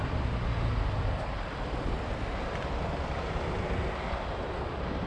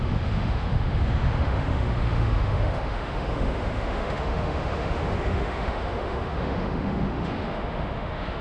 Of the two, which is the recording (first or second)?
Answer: first